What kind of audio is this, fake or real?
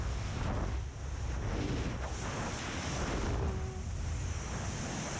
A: real